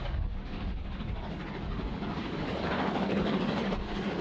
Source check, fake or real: fake